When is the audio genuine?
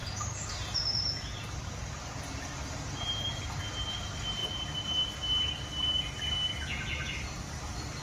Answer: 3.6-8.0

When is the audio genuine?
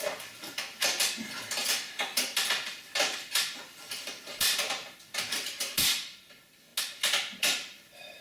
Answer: 6.7-7.4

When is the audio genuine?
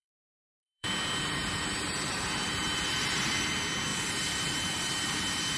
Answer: 3.4-3.9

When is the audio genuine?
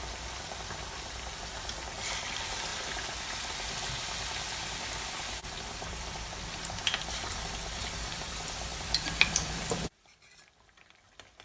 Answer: none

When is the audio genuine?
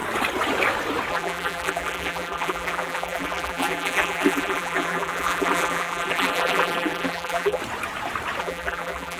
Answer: 0.0-1.1; 7.6-8.4